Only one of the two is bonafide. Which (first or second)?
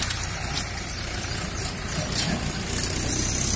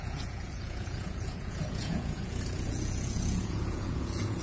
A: first